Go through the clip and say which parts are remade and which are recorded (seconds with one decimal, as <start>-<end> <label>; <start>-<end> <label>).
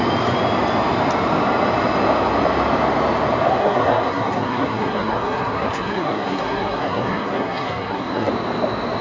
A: 0.0-3.6 recorded; 3.6-8.3 remade; 8.3-9.0 recorded